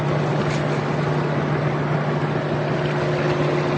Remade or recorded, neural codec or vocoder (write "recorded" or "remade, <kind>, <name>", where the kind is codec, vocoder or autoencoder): recorded